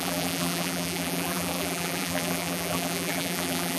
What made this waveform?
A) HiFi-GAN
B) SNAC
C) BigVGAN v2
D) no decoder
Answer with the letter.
C